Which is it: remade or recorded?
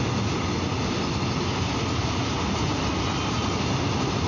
recorded